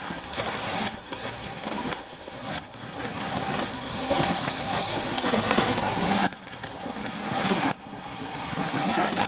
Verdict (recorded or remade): remade